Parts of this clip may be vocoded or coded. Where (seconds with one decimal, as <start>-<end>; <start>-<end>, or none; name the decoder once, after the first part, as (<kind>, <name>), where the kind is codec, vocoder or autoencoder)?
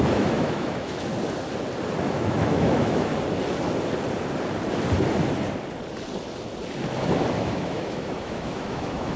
0.0-1.1 (autoencoder, DAC-VAE); 2.0-3.1; 7.4-9.2